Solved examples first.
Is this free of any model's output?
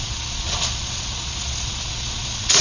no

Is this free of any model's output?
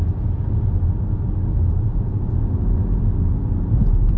yes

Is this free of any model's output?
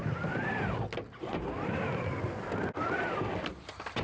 yes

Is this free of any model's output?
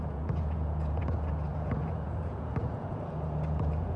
no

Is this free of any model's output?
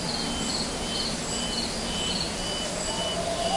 yes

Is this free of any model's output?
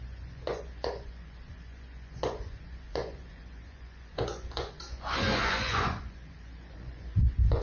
no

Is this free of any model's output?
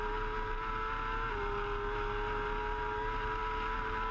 yes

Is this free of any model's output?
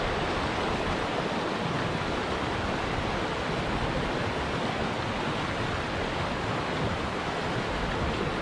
yes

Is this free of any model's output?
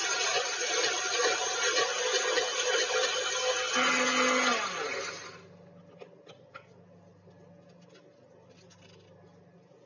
yes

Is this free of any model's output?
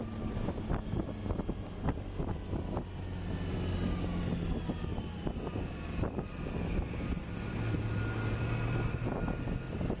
yes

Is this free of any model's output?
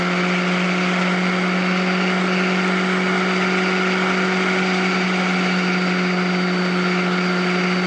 yes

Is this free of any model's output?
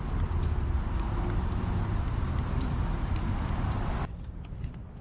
yes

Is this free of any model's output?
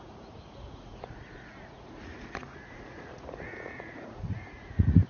no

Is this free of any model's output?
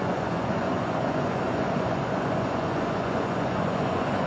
no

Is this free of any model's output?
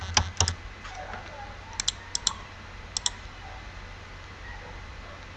yes